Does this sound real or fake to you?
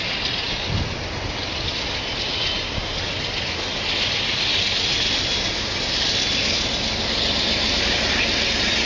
real